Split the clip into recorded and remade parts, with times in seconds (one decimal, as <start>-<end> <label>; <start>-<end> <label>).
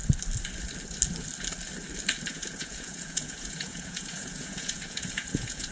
0.0-2.3 recorded; 2.3-5.7 remade